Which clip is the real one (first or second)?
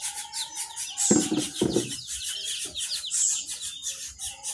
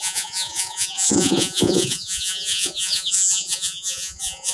first